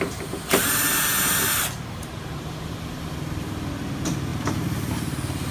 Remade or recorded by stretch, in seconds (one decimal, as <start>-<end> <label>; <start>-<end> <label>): 0.0-4.3 recorded; 4.3-4.9 remade; 4.9-5.5 recorded